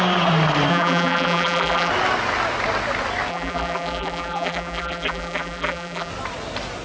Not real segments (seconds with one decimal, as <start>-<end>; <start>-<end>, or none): 0.7-1.9; 3.3-6.1